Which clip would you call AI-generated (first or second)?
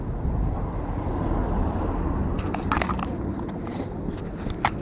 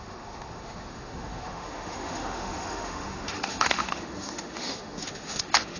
second